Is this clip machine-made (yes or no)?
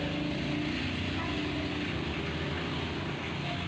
no